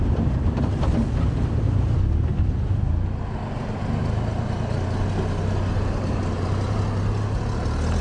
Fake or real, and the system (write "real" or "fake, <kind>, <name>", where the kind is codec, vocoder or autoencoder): real